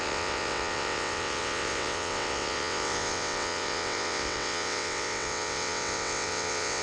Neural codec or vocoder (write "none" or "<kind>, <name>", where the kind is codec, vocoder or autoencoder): vocoder, WaveNeXt